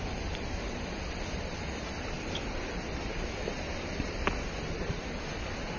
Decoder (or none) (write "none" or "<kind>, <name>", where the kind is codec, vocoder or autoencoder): none